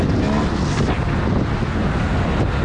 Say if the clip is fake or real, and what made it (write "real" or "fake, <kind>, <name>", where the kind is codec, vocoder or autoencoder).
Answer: real